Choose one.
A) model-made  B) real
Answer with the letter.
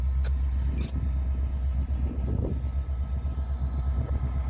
B